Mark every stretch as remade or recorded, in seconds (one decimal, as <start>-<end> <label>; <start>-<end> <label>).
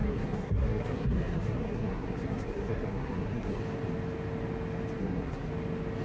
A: 0.0-3.6 remade; 3.6-5.0 recorded; 5.0-5.5 remade; 5.5-6.0 recorded